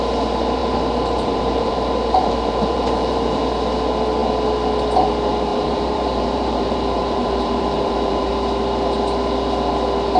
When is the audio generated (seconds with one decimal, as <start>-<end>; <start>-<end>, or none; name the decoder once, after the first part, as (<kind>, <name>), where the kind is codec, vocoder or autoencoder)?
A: 0.6-3.4 (vocoder, BigVGAN v2); 5.5-8.3